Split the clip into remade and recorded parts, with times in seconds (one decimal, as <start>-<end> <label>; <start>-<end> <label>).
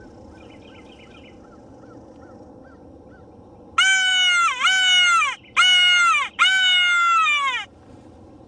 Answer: 0.0-8.5 recorded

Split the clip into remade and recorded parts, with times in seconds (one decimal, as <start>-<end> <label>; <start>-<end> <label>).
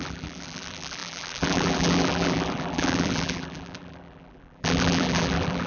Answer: 0.0-5.7 remade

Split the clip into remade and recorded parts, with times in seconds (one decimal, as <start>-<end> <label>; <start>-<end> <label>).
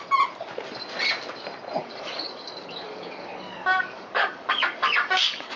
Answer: 0.0-1.8 recorded; 1.8-5.6 remade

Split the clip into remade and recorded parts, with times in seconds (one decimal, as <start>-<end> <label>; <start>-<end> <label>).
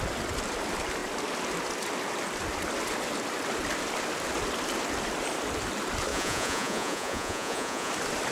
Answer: 0.0-6.1 recorded; 6.1-7.9 remade; 7.9-8.3 recorded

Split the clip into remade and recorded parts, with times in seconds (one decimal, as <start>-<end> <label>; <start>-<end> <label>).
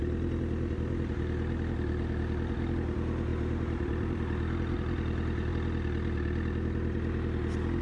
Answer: 0.0-3.3 recorded; 3.3-5.5 remade; 5.5-7.8 recorded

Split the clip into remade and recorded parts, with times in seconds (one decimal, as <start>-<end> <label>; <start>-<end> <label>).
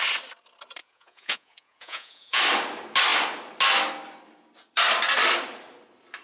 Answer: 0.0-0.8 recorded; 0.8-2.4 remade; 2.4-6.2 recorded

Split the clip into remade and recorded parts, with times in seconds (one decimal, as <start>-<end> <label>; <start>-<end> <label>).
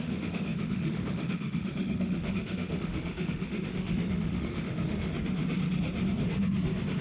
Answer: 0.0-5.1 remade; 5.1-7.0 recorded